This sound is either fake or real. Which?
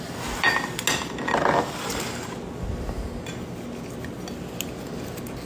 real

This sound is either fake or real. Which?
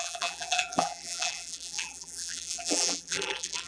fake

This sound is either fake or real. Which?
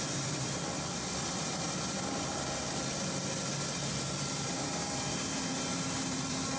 fake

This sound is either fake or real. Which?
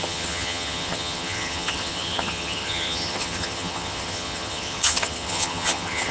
fake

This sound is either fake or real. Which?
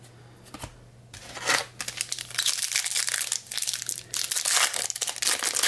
real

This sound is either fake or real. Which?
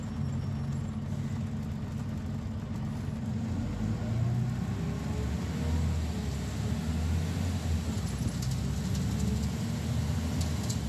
real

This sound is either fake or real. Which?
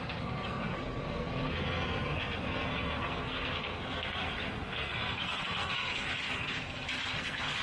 fake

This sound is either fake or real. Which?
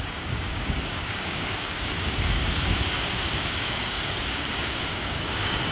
fake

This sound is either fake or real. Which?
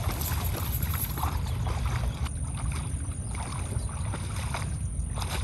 real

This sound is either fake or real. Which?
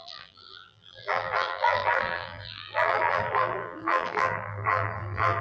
fake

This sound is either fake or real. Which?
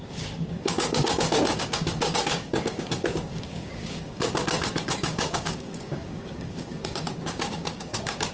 fake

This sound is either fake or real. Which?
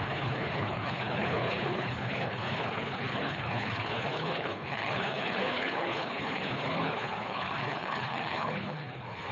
fake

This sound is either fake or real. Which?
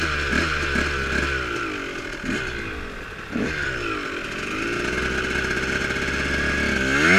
real